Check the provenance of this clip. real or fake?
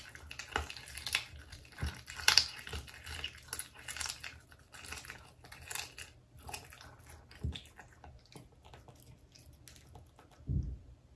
real